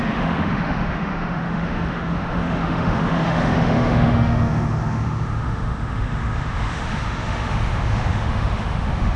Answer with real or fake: fake